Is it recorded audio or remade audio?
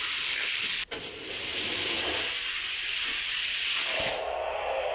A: remade